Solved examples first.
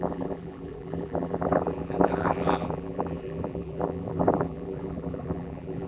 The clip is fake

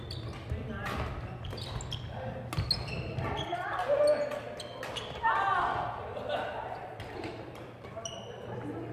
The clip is real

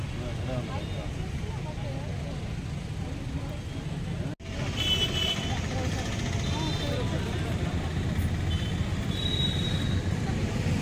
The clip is real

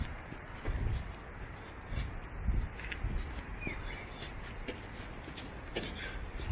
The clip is real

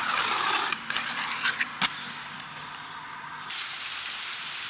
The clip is fake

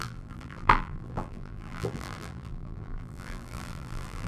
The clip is fake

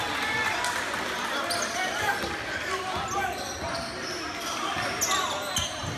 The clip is real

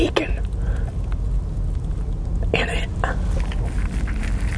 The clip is real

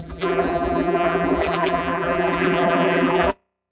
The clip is fake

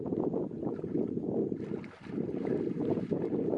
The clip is fake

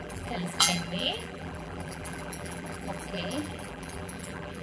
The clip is fake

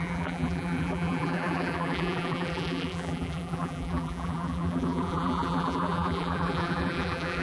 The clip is fake